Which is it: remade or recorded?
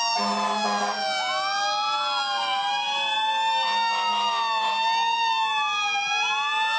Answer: recorded